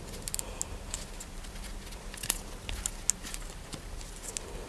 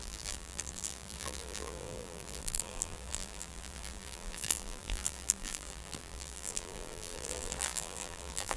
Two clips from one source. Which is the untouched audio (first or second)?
first